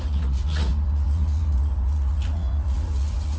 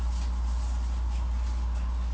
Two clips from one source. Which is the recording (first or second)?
second